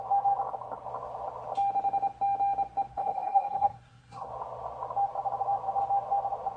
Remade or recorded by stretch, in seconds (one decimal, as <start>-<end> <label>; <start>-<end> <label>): 0.0-2.9 recorded; 2.9-4.3 remade; 4.3-6.6 recorded